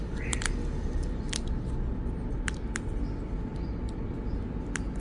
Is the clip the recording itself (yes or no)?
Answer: yes